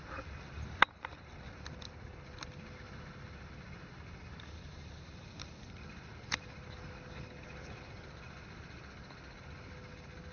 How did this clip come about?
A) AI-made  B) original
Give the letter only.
B